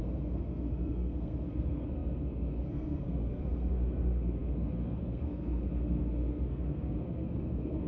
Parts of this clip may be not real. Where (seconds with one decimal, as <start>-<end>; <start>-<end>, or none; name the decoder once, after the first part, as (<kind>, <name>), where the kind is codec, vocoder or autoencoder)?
0.0-7.9 (codec, SNAC)

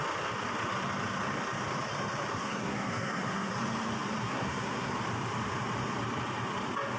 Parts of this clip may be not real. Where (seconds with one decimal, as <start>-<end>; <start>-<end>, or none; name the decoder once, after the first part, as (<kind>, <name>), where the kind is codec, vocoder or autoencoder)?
2.3-3.5 (codec, SNAC); 4.2-4.9

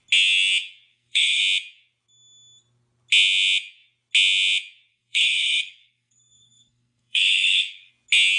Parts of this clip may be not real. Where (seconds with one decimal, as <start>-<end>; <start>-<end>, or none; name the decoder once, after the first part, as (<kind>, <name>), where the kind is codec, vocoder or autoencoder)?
0.9-1.4 (codec, SNAC); 4.9-7.9

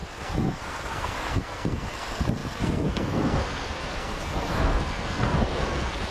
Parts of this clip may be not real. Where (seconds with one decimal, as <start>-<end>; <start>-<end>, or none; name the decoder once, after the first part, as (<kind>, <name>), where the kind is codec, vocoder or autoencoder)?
0.0-6.1 (codec, SNAC)

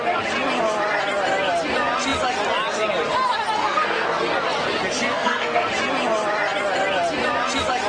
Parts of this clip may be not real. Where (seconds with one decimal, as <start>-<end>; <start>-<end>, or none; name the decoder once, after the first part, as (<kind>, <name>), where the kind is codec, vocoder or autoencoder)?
3.6-4.2 (codec, SNAC); 5.1-5.7

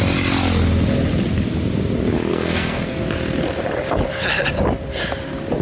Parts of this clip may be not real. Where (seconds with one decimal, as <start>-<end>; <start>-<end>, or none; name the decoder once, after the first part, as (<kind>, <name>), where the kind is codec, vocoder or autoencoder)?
2.3-3.0 (codec, SNAC)

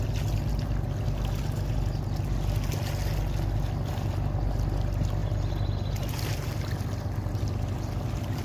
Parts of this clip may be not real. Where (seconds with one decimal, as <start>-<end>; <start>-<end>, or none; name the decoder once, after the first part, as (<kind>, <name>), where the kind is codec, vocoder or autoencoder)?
none

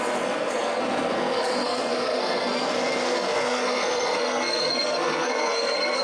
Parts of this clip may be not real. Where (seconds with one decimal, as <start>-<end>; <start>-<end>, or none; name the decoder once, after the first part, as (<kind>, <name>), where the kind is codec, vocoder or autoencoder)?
0.0-6.0 (codec, SNAC)